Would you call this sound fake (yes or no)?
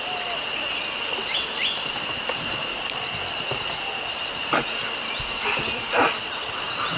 no